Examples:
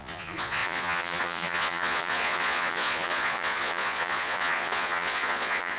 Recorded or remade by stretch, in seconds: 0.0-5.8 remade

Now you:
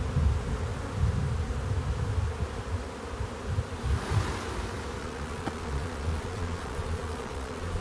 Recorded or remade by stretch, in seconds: 0.0-5.0 recorded; 5.0-7.8 remade